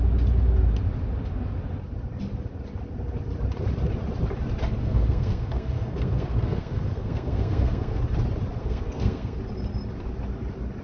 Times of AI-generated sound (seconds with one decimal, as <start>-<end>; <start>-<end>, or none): 4.8-8.0; 8.6-9.4